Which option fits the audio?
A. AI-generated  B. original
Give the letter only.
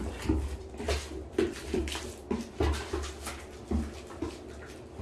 B